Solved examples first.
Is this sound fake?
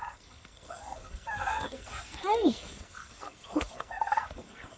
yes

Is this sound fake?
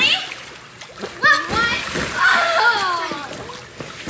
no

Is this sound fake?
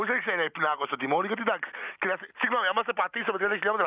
no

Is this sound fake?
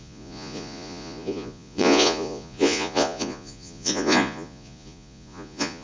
yes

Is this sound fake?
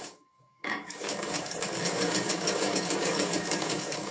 yes